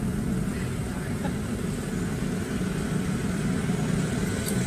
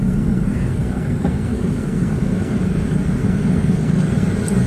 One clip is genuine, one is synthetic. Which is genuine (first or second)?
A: first